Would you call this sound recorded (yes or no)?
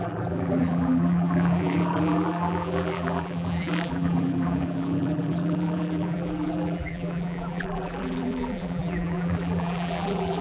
no